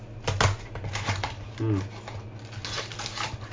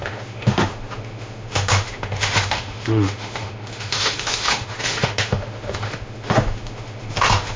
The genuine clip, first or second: first